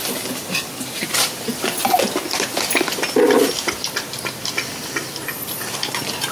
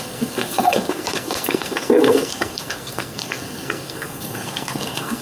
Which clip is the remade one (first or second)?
second